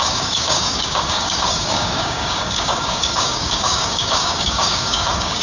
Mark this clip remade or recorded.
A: remade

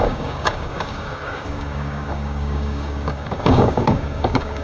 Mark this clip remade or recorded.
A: remade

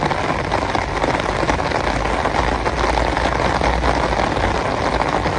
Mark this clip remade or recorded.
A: recorded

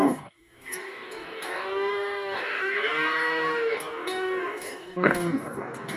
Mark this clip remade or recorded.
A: remade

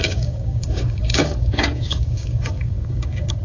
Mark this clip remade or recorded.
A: remade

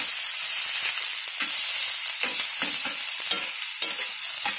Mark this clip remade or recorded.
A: recorded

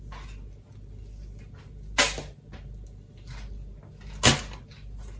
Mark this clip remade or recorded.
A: recorded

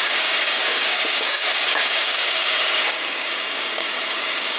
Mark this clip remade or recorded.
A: remade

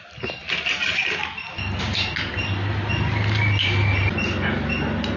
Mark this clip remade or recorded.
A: recorded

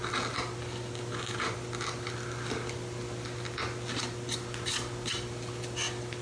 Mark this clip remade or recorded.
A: recorded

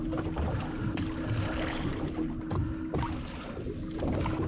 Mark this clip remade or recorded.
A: recorded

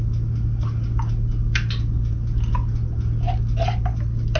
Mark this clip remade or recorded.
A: recorded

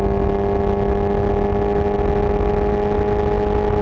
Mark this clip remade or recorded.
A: recorded